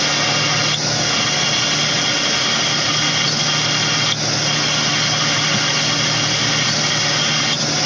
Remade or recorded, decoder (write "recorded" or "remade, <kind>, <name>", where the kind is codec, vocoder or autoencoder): recorded